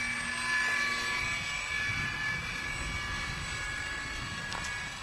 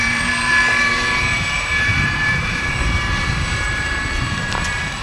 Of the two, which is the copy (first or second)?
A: second